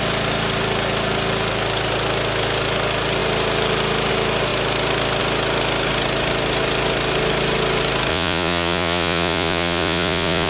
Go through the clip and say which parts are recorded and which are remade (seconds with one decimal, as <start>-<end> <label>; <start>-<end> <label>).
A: 0.0-8.1 recorded; 8.1-10.5 remade